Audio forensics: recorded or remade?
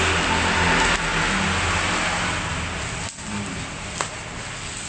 recorded